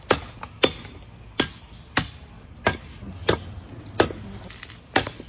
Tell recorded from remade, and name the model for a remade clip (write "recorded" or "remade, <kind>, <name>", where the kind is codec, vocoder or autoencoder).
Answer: recorded